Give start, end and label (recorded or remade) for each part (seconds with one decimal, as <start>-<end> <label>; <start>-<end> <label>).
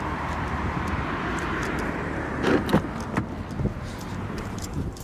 0.0-2.7 remade; 2.7-4.1 recorded; 4.1-5.0 remade